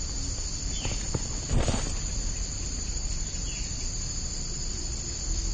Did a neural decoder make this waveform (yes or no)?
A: no